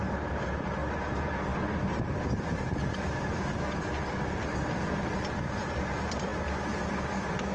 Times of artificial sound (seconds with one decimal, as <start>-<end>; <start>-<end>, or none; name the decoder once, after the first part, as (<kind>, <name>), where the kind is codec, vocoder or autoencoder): none